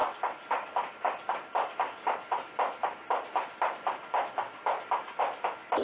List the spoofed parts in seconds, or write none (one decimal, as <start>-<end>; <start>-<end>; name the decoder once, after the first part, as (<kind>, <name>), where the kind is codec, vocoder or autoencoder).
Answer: none

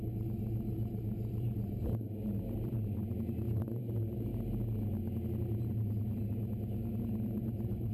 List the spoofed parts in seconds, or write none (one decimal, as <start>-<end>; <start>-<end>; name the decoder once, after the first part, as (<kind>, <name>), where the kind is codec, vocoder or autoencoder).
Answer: 0.0-4.3 (vocoder, BigVGAN v2); 5.4-6.4; 7.0-7.9

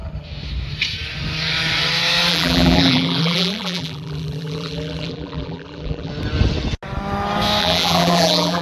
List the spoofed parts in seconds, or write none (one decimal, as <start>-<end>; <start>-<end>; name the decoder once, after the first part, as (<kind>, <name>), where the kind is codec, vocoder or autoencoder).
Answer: 2.3-6.1 (vocoder, BigVGAN v2); 7.6-8.6

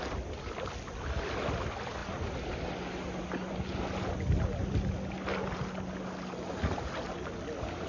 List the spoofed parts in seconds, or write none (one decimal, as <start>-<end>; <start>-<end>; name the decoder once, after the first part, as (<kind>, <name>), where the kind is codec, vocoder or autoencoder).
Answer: none

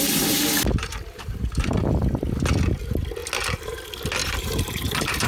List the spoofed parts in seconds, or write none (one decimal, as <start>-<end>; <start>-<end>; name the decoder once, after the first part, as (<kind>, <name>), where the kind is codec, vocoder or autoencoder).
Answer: 0.8-1.8 (vocoder, BigVGAN v2); 4.2-5.3

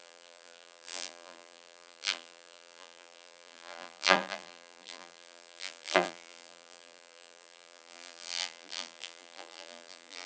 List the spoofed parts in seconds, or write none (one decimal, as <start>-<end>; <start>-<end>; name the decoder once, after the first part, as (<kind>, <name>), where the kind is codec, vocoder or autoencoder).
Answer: 0.0-10.3 (vocoder, BigVGAN v2)

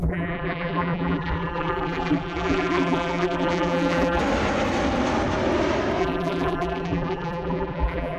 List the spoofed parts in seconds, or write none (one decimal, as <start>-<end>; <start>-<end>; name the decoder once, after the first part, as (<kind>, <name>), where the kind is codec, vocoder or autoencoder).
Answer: 0.0-4.2 (vocoder, BigVGAN v2); 6.0-8.2